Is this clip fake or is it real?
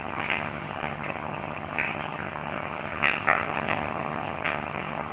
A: fake